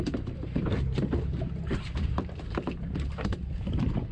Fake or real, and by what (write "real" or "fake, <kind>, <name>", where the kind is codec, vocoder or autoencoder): fake, vocoder, BigVGAN v2